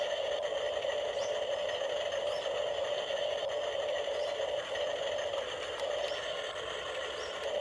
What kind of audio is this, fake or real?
real